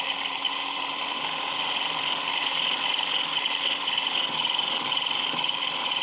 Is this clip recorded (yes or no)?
no